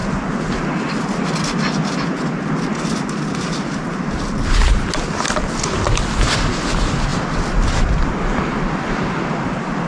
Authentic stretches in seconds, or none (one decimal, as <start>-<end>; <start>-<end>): 0.0-7.1; 9.2-9.9